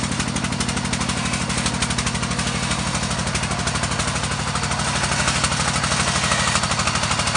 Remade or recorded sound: recorded